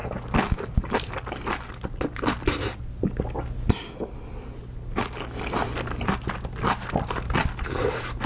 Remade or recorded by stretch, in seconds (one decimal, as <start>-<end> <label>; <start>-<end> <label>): 0.0-8.3 recorded